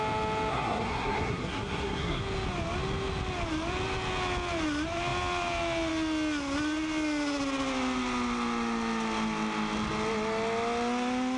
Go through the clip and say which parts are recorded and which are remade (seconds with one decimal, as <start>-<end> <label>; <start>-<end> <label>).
0.0-0.5 recorded; 0.5-2.2 remade; 2.2-11.4 recorded